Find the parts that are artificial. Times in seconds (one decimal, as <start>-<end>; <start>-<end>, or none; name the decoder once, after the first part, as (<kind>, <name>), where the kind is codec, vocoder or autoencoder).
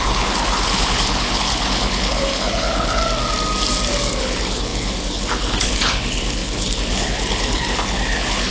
0.0-3.0 (codec, HILCodec); 4.2-8.5